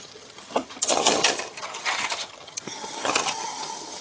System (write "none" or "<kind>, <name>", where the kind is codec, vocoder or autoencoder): vocoder, HiFi-GAN